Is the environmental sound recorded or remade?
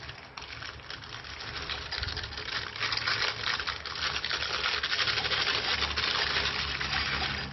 recorded